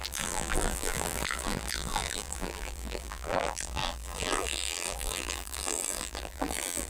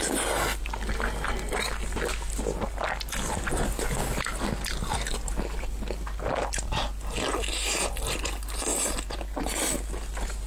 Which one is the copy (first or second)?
first